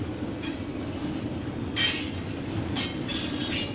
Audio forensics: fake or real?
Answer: real